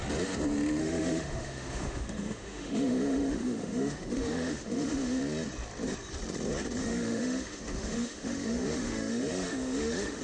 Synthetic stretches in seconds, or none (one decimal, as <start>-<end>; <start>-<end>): 0.8-5.2; 6.8-10.2